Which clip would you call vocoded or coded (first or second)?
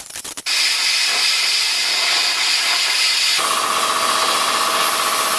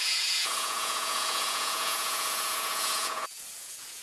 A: second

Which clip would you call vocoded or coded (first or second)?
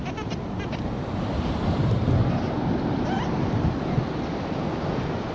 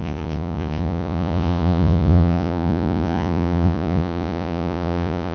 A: second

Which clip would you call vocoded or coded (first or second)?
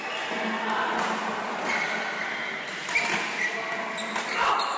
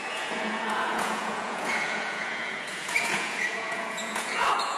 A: second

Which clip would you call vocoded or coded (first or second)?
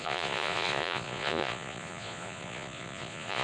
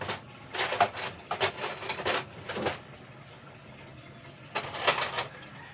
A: first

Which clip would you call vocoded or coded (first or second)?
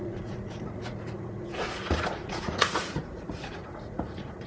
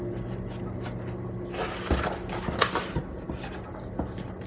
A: first